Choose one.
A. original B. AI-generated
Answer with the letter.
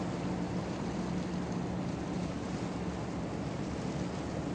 A